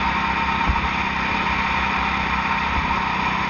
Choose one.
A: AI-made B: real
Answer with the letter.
B